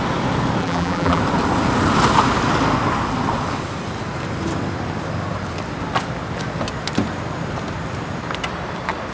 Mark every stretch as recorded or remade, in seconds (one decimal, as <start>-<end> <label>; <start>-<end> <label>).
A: 0.0-0.6 recorded; 0.6-1.2 remade; 1.2-9.1 recorded